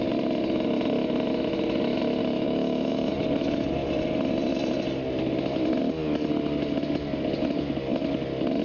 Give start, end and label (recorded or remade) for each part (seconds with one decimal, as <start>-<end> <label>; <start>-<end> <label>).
0.0-2.2 recorded; 2.2-3.1 remade; 3.1-8.6 recorded

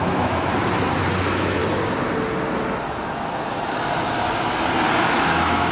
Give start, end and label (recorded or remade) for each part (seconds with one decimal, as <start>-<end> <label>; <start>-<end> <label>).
0.0-0.5 remade; 0.5-1.2 recorded; 1.2-1.6 remade; 1.6-5.0 recorded; 5.0-5.7 remade

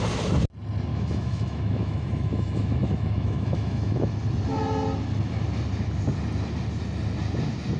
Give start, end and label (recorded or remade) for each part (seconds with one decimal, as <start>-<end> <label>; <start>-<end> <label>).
0.0-0.9 recorded; 0.9-4.1 remade; 4.1-7.8 recorded

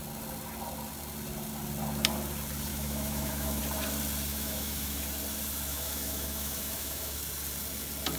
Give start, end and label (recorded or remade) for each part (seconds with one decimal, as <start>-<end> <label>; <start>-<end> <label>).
0.0-2.7 recorded; 2.7-3.6 remade; 3.6-4.3 recorded; 4.3-5.0 remade; 5.0-5.7 recorded; 5.7-7.2 remade; 7.2-8.2 recorded

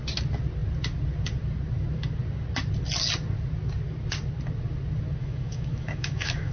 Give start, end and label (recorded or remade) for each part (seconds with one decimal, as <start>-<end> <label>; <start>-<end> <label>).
0.0-5.2 recorded; 5.2-6.5 remade

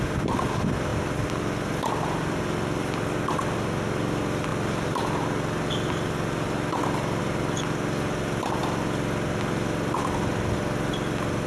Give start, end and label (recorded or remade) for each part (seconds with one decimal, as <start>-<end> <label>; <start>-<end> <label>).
0.0-11.5 recorded

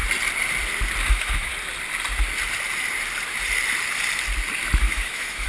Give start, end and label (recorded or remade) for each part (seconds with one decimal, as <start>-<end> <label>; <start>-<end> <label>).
0.0-1.1 recorded; 1.1-1.5 remade; 1.5-4.8 recorded; 4.8-5.5 remade

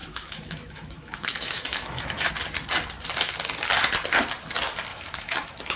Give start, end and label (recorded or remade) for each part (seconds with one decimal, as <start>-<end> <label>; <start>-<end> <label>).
0.0-2.3 remade; 2.3-4.9 recorded; 4.9-5.8 remade